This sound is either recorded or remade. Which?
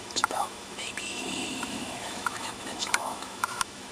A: remade